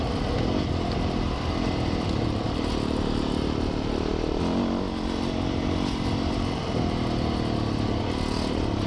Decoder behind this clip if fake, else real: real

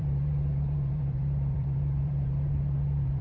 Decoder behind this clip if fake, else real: fake, vocoder, BigVGAN v2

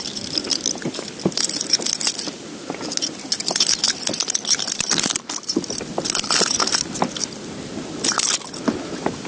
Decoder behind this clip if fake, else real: real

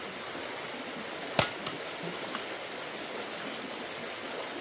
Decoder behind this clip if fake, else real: real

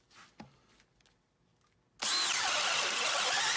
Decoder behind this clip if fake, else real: real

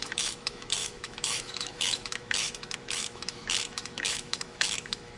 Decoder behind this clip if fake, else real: fake, autoencoder, DAC-VAE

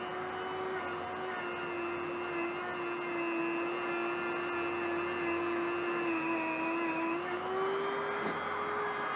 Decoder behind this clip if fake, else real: real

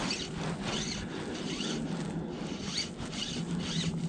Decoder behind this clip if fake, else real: real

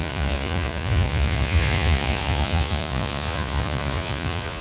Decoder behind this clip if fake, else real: fake, vocoder, Vocos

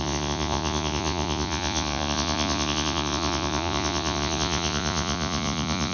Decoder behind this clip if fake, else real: fake, vocoder, Vocos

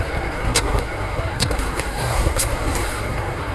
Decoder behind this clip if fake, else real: fake, codec, SNAC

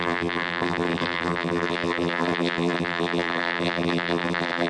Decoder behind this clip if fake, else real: fake, vocoder, BigVGAN v2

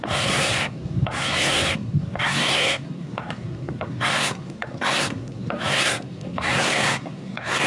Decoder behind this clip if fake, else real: fake, codec, SNAC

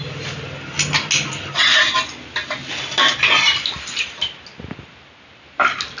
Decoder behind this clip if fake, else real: real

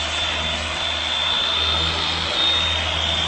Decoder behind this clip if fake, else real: real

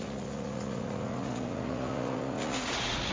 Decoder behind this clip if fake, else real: fake, vocoder, Vocos